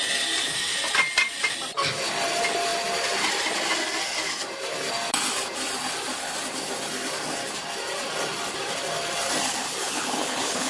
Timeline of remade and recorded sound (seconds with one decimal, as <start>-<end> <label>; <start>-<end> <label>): 0.0-9.6 recorded; 9.6-10.7 remade